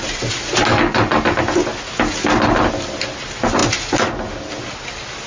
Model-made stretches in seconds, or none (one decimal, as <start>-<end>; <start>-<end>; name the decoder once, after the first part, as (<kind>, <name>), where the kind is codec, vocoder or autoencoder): none